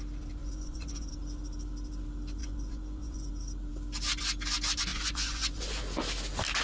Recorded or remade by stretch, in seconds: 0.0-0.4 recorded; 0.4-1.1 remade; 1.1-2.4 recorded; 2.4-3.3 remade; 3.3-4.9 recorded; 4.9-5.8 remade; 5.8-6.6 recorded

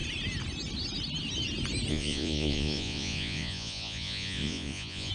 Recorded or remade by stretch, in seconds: 0.0-1.9 recorded; 1.9-5.1 remade

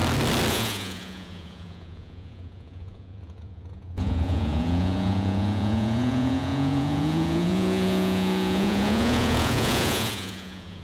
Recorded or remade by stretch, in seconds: 0.0-0.5 recorded; 0.5-10.8 remade

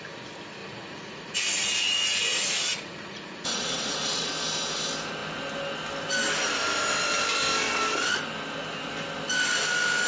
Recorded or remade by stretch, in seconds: 0.0-0.6 recorded; 0.6-4.3 remade; 4.3-10.1 recorded

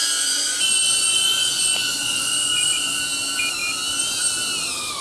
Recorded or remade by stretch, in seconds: 0.0-3.0 remade; 3.0-5.0 recorded

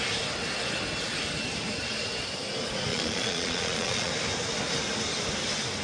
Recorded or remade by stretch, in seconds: 0.0-2.9 recorded; 2.9-4.1 remade; 4.1-5.8 recorded

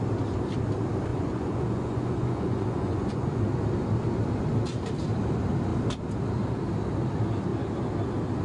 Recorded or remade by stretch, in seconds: 0.0-1.1 recorded; 1.1-3.4 remade; 3.4-8.4 recorded

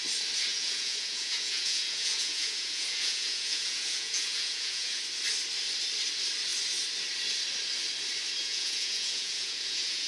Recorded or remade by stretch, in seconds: 0.0-0.5 recorded; 0.5-5.0 remade; 5.0-8.4 recorded; 8.4-10.1 remade